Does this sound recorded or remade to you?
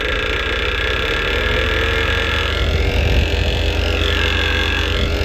recorded